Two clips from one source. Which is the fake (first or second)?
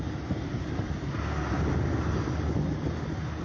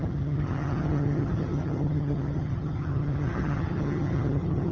second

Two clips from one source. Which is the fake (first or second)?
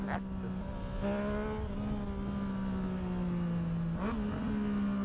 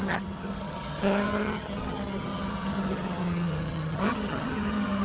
second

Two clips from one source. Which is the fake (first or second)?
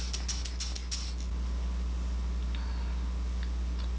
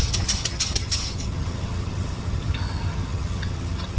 second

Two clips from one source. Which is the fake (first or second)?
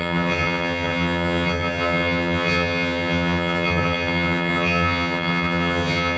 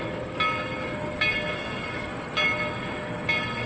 first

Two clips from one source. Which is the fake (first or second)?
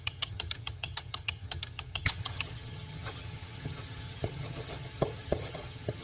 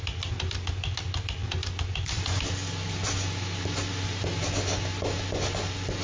first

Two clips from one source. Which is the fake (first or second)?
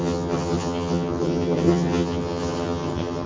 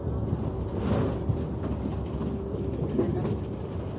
first